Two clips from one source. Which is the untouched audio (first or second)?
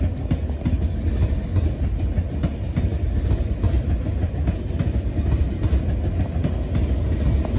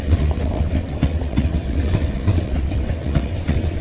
first